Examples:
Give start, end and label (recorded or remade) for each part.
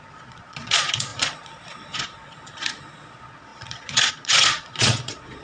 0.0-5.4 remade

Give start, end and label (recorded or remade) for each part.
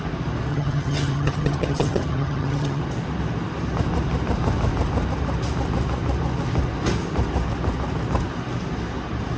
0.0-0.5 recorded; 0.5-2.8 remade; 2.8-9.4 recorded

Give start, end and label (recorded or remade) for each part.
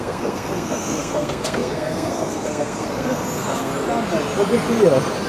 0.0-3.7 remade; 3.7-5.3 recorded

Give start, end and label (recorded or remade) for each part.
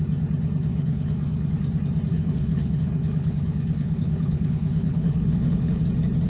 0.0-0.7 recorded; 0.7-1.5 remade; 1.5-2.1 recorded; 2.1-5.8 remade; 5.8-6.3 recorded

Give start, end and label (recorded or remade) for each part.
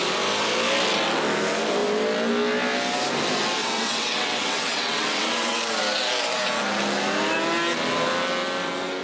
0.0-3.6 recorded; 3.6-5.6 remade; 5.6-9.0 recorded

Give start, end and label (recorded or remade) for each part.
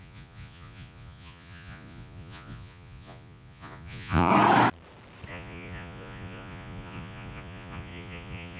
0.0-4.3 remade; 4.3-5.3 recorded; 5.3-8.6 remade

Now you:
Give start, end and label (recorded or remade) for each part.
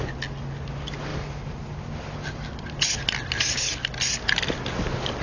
0.0-5.2 recorded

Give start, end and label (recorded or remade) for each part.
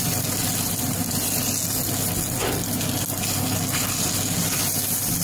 0.0-0.4 recorded; 0.4-1.6 remade; 1.6-2.4 recorded; 2.4-3.4 remade; 3.4-5.2 recorded